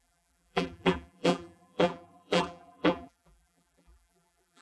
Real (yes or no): no